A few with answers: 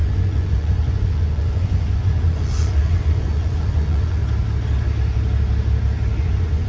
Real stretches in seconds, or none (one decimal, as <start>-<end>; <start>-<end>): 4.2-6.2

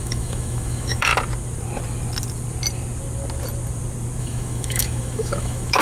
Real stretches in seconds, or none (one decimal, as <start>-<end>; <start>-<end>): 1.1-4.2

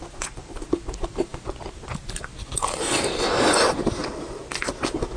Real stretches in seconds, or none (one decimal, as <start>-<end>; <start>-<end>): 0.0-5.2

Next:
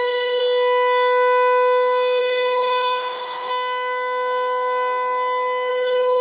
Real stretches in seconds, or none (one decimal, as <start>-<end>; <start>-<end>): 0.4-2.2; 3.5-5.7

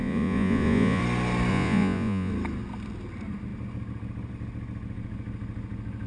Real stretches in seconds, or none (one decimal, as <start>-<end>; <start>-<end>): 1.0-1.5; 2.3-6.1

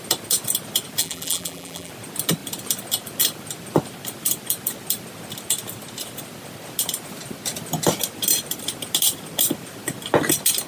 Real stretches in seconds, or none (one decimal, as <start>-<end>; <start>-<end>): 0.0-1.0; 1.9-10.7